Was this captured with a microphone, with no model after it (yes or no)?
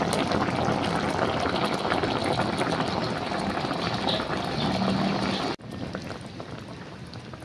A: yes